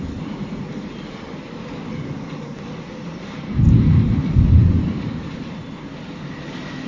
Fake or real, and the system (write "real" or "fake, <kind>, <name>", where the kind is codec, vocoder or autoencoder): real